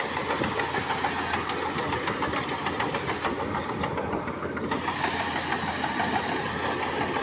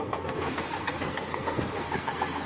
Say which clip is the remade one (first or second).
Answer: second